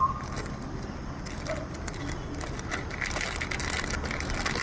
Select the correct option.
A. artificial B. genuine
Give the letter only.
B